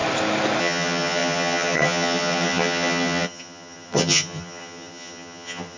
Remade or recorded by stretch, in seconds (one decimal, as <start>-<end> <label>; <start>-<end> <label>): 0.0-0.6 recorded; 0.6-5.8 remade